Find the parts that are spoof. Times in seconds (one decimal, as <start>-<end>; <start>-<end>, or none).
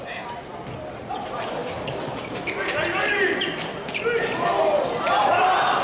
none